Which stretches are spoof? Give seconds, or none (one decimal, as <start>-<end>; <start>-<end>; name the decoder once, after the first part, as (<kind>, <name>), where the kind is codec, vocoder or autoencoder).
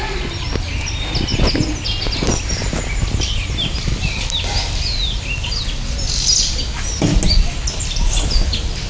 none